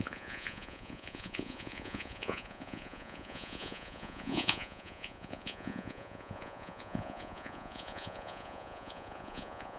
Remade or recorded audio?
remade